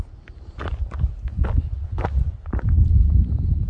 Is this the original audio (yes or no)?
yes